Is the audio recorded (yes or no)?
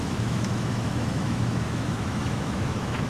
no